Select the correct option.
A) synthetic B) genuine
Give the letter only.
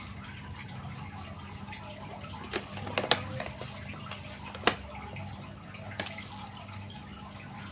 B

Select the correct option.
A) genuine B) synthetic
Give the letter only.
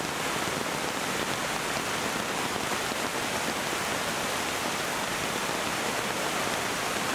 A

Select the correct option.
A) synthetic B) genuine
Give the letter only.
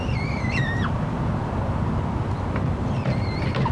A